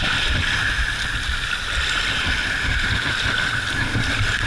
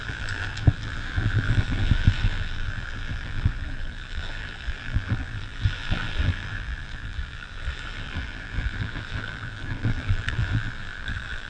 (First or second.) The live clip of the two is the first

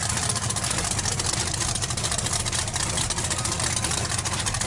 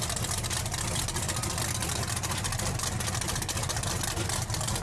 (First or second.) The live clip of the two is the second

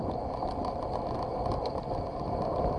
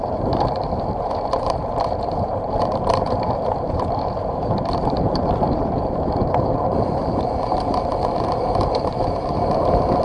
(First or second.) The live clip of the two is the first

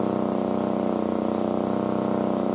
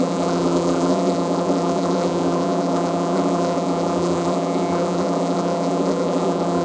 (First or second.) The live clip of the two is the first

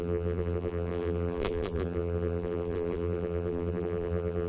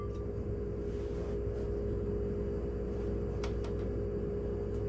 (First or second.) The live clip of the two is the second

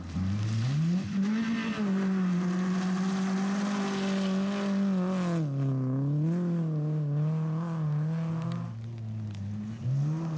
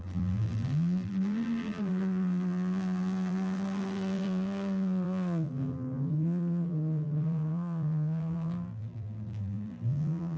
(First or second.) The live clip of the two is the first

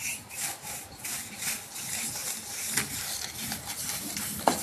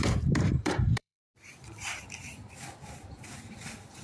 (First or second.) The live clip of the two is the first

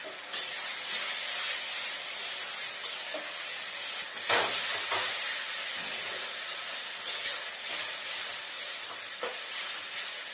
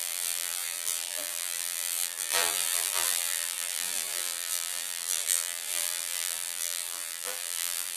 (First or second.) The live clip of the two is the first